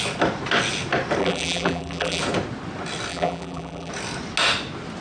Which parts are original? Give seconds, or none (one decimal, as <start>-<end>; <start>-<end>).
0.0-1.2; 2.2-3.1; 3.9-5.0